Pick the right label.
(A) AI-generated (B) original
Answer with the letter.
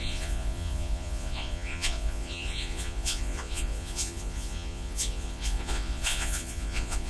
A